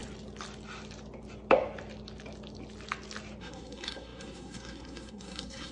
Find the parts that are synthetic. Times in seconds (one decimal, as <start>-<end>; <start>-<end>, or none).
3.4-5.7